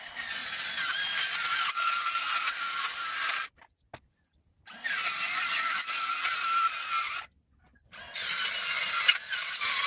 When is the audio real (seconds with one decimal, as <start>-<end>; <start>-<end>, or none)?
0.0-9.9